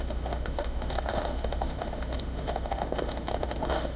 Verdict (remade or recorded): remade